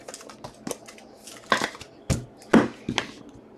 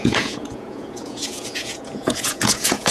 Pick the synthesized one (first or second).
second